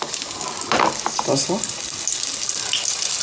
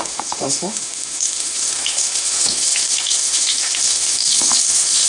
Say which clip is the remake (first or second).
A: second